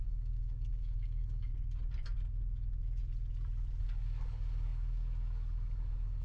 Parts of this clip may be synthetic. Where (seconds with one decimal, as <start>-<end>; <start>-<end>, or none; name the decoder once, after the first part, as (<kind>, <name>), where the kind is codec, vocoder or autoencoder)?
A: 0.0-1.5 (codec, DAC); 3.8-6.2